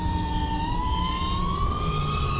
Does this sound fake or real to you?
real